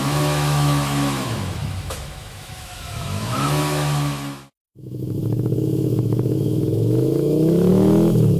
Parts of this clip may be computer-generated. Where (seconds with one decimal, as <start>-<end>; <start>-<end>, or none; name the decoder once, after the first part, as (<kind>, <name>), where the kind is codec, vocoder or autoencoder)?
0.0-8.4 (autoencoder, DAC-VAE)